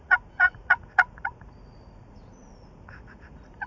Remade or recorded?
remade